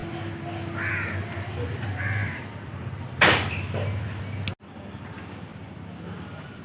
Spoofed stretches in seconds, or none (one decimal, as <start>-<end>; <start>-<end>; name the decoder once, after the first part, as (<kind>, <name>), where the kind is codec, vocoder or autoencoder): none